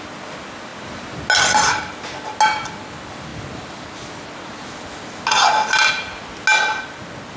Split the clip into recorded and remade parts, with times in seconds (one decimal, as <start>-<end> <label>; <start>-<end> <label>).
0.0-7.4 recorded